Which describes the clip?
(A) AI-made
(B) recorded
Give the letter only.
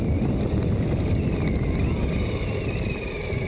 B